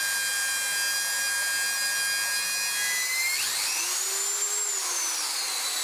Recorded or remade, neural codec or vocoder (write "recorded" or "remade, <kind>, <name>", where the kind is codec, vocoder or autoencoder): recorded